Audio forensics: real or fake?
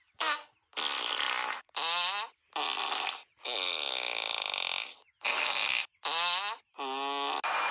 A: real